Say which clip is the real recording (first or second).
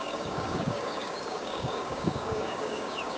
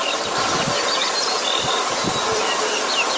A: second